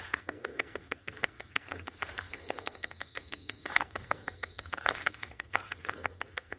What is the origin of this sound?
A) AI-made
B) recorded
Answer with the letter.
A